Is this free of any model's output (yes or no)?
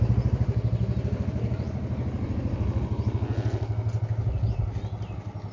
yes